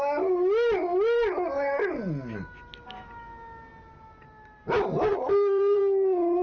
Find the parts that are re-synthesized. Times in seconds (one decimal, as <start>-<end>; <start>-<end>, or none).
5.1-5.8